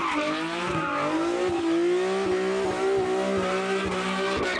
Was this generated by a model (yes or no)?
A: no